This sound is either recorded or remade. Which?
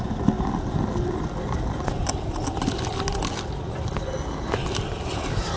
recorded